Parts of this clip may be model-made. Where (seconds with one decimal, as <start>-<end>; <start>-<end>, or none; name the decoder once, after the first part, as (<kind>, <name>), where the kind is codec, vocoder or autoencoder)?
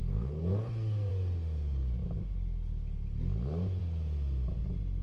0.0-1.1 (codec, SNAC)